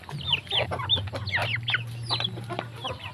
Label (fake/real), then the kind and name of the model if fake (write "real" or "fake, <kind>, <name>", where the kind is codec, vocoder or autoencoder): real